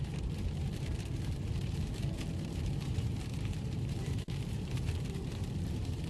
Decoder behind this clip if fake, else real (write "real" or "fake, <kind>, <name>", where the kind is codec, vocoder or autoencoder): fake, vocoder, BigVGAN v2